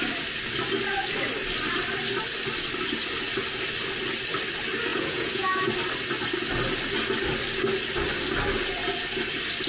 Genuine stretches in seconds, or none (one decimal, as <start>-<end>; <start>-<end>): 0.0-4.9; 5.7-9.7